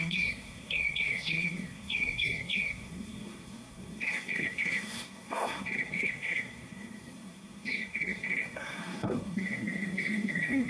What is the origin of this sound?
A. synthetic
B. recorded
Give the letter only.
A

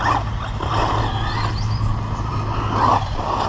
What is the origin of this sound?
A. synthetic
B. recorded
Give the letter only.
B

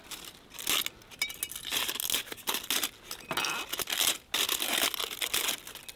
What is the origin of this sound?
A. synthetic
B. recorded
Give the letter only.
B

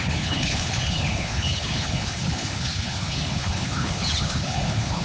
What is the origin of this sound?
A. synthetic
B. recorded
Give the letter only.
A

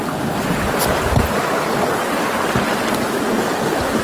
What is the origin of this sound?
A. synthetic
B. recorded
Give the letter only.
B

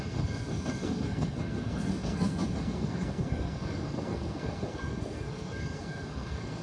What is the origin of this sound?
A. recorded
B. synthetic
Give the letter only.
B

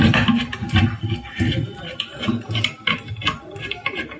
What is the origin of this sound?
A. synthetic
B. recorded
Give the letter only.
B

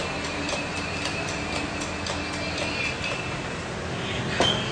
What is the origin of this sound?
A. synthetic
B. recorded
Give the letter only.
B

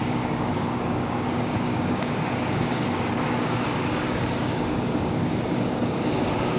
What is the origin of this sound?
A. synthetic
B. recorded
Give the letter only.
A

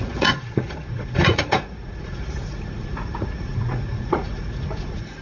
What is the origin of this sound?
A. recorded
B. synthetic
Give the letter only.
B